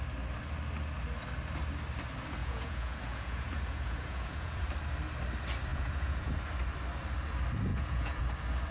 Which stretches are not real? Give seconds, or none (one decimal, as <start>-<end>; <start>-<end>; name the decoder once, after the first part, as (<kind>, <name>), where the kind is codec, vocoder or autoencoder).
2.4-4.6 (vocoder, Vocos); 5.7-6.3; 7.7-8.2